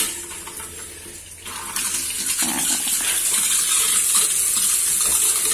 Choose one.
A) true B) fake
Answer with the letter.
A